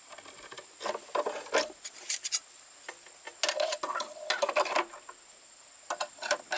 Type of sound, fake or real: real